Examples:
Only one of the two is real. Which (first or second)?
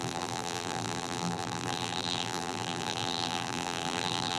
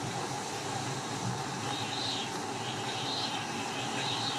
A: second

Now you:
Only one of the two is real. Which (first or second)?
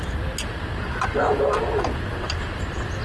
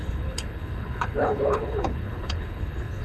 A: first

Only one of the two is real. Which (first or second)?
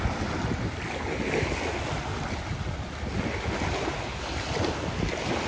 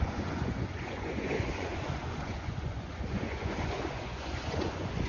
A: first